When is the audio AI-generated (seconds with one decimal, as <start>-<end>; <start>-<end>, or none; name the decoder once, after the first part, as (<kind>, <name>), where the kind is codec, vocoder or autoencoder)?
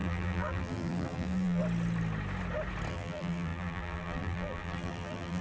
0.0-1.6 (vocoder, BigVGAN v2); 2.9-5.4